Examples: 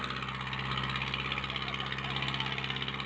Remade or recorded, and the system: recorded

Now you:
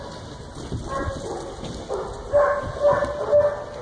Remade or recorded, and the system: recorded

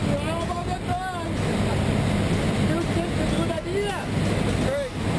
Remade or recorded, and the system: recorded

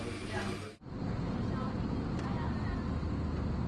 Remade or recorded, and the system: recorded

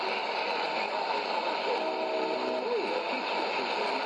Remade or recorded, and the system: recorded